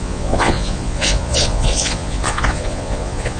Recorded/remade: remade